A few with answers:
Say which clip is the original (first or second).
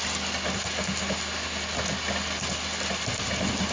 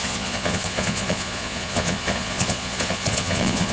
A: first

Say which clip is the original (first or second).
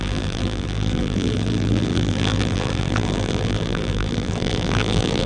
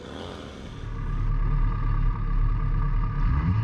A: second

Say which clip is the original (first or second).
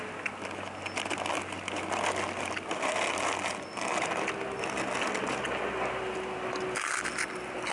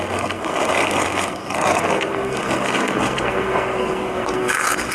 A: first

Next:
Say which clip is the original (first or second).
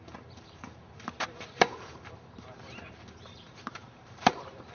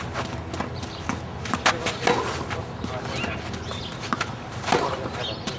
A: second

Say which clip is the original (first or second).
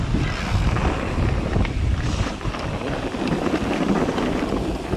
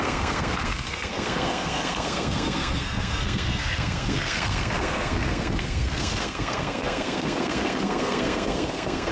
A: first